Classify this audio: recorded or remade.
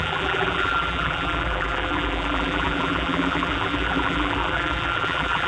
remade